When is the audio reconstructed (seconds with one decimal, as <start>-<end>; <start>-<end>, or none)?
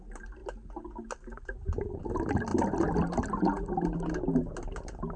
none